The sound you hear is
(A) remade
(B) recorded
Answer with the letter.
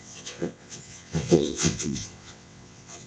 A